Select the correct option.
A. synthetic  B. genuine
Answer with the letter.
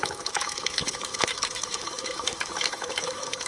A